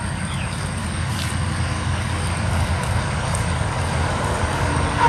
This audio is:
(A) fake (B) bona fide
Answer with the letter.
A